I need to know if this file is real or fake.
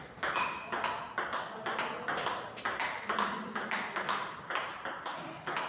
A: real